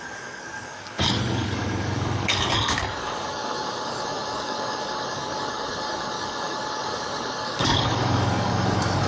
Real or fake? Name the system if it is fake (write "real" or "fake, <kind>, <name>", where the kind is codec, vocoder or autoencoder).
fake, codec, DAC